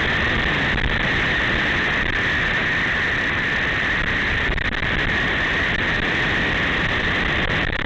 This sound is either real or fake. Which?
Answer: fake